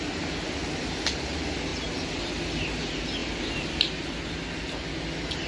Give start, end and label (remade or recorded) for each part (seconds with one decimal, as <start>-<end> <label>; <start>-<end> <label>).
0.0-5.5 recorded